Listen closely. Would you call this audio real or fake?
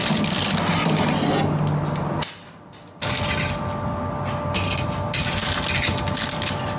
real